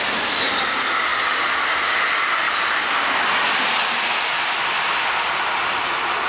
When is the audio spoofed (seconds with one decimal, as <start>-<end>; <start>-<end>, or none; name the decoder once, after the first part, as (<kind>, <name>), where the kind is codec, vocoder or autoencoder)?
none